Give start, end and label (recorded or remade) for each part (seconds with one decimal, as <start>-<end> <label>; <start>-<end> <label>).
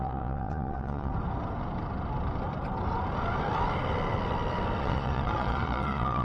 0.0-1.1 remade; 1.1-4.8 recorded; 4.8-6.2 remade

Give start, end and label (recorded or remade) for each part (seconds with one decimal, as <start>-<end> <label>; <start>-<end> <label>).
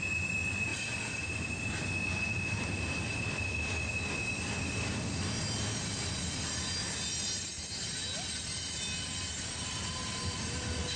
0.0-11.0 recorded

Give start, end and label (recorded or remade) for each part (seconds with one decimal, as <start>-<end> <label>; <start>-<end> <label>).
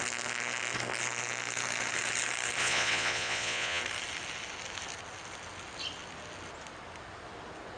0.0-2.6 recorded; 2.6-3.8 remade; 3.8-7.8 recorded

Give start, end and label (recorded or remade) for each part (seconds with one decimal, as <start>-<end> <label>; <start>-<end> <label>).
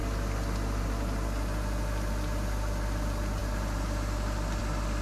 0.0-5.0 recorded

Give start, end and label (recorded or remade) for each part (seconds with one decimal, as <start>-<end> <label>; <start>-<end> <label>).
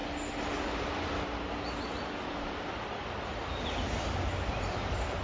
0.0-5.2 recorded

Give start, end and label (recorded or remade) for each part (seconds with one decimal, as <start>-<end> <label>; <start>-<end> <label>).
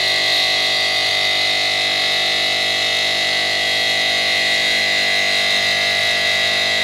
0.0-1.1 remade; 1.1-2.0 recorded; 2.0-4.8 remade; 4.8-6.0 recorded; 6.0-6.8 remade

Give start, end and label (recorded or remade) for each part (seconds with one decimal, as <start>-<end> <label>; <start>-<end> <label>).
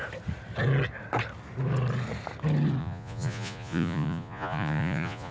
0.0-2.8 recorded; 2.8-5.3 remade